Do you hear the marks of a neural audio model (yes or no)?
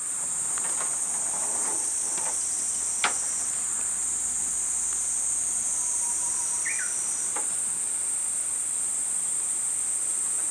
no